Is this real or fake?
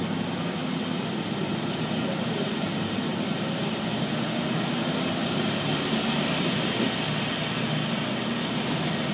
real